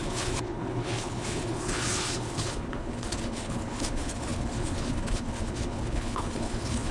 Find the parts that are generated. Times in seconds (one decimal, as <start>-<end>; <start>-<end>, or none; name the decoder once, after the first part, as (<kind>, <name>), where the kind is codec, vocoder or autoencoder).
0.0-6.9 (codec, HILCodec)